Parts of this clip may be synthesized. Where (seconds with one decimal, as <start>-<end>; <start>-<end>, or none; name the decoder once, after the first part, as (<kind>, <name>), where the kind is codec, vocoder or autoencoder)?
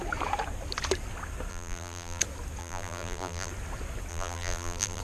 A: 1.5-2.2 (vocoder, BigVGAN v2); 2.6-3.5; 4.1-5.0